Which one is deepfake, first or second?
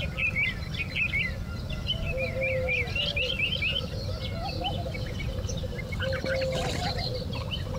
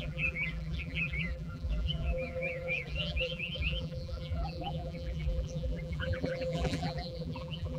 second